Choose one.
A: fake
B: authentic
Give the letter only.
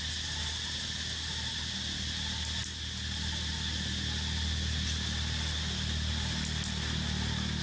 B